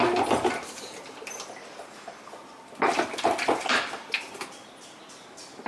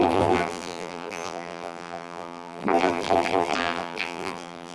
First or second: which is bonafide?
first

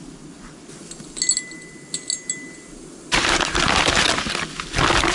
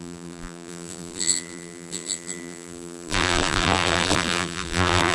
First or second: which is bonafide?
first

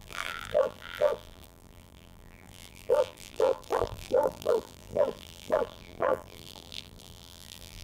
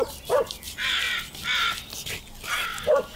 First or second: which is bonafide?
second